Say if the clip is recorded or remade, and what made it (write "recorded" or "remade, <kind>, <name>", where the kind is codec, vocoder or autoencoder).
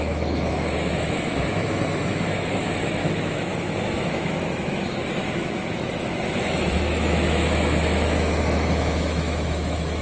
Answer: remade, autoencoder, DAC-VAE